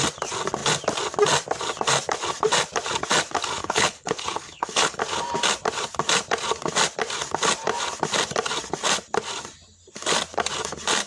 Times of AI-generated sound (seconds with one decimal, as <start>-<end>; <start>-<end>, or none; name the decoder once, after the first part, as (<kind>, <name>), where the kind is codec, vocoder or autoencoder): 3.6-5.0 (codec, HILCodec)